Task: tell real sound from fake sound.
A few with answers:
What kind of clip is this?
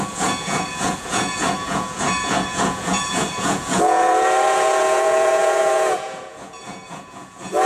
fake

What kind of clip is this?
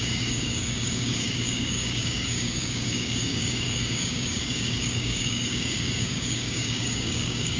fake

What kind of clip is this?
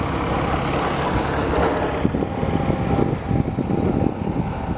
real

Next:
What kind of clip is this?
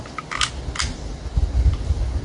real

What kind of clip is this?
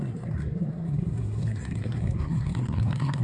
fake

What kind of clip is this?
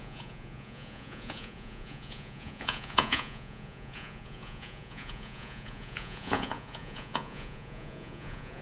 fake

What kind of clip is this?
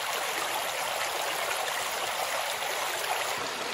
real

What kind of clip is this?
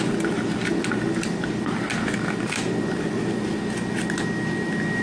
real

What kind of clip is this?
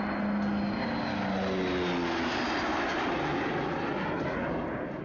real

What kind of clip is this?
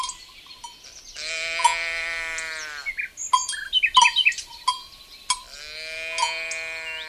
real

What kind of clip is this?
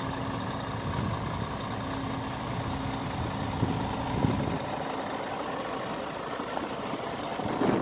real